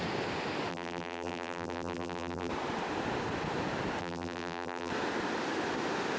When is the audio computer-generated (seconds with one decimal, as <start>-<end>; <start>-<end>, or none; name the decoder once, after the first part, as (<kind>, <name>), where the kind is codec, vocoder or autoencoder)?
0.7-2.5 (vocoder, BigVGAN v2); 4.0-4.9